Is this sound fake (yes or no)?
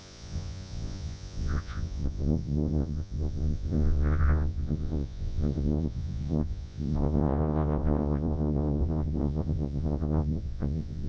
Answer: yes